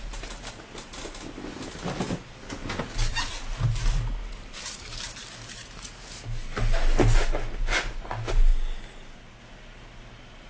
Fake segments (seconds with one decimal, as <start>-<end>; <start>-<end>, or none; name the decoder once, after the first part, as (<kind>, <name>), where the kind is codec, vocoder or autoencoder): none